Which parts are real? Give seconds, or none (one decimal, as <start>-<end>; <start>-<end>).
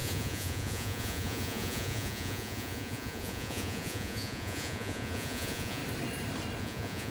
5.8-6.6